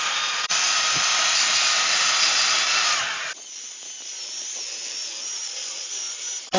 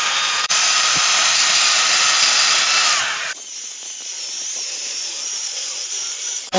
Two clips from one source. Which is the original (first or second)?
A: first